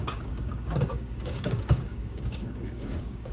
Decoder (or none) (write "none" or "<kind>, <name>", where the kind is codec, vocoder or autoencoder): codec, DAC